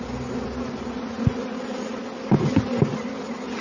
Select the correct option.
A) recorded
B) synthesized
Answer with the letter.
A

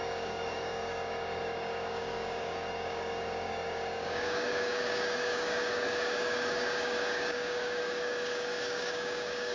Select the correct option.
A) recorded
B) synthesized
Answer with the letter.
B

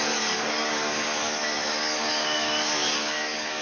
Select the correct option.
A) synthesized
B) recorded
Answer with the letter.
A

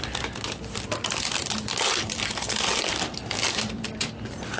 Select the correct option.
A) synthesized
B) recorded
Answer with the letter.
B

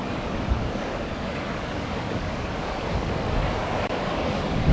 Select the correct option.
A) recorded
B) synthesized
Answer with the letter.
B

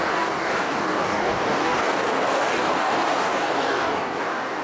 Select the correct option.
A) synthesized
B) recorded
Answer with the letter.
A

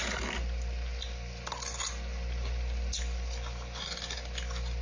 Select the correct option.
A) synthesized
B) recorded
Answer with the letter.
B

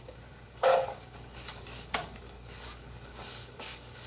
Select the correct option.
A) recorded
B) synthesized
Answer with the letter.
B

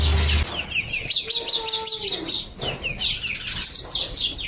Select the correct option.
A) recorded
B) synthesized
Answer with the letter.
A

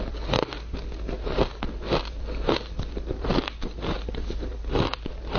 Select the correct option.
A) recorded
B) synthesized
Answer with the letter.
A